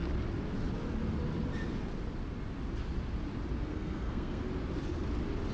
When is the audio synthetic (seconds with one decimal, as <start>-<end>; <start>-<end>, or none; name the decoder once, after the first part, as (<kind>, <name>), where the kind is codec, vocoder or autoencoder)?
3.7-4.4 (codec, SNAC)